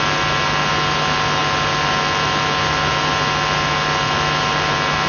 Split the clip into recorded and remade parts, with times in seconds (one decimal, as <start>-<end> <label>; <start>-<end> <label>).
0.0-5.1 recorded

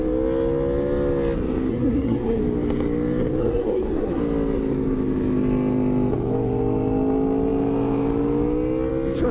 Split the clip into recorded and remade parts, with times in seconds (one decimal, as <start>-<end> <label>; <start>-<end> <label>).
0.0-1.7 recorded; 1.7-2.4 remade; 2.4-3.4 recorded; 3.4-4.2 remade; 4.2-9.3 recorded

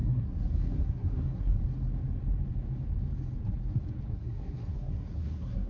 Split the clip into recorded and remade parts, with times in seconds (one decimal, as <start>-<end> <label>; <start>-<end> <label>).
0.0-1.6 remade; 1.6-4.1 recorded; 4.1-5.7 remade